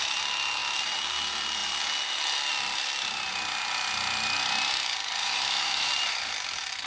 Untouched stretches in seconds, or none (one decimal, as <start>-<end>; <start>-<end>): 0.0-5.2; 5.9-6.9